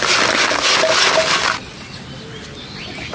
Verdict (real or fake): real